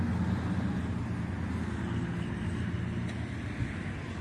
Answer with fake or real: real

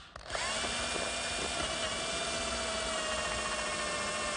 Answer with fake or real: real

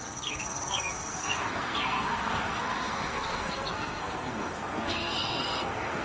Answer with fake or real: fake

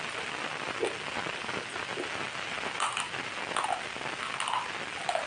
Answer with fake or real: real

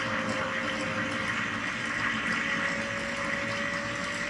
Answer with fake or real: real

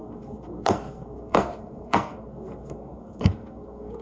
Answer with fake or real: fake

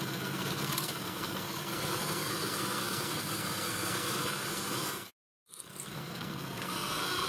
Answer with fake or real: fake